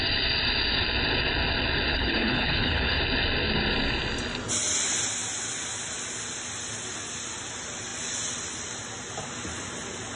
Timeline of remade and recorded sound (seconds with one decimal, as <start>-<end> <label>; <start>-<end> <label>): 0.0-1.9 recorded; 1.9-3.0 remade; 3.0-10.2 recorded